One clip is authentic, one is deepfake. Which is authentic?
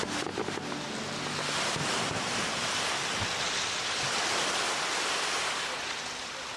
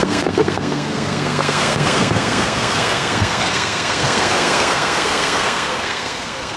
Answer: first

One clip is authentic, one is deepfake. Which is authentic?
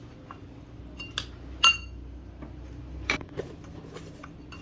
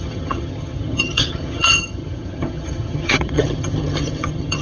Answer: first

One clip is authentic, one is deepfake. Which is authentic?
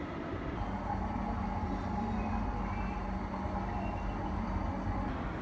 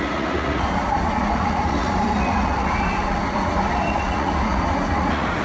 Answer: first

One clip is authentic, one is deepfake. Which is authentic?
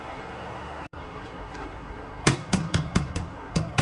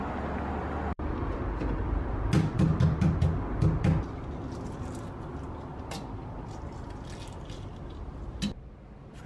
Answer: second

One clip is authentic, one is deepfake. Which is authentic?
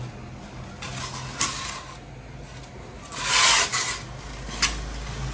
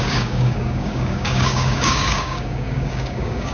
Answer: first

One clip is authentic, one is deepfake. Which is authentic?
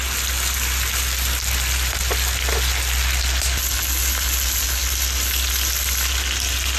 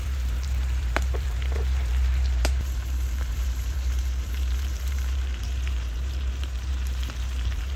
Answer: first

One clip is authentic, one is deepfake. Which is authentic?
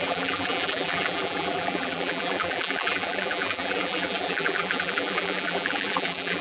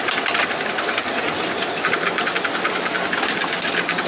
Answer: second